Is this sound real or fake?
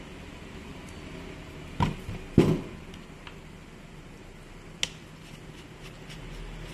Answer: real